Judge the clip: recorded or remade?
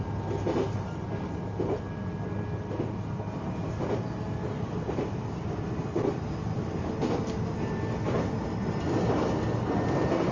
recorded